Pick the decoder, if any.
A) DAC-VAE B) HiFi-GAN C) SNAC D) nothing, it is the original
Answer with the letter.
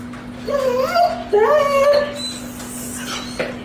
D